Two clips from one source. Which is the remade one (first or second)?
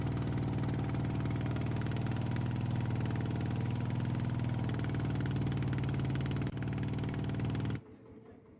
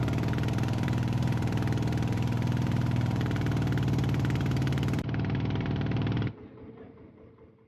second